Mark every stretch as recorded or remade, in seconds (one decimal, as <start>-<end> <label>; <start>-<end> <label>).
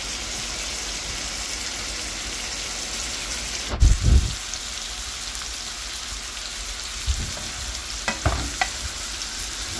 0.0-9.8 recorded